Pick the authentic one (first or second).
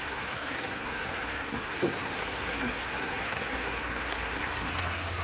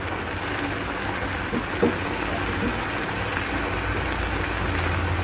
second